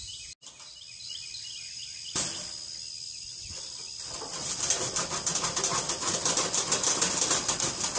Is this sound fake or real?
real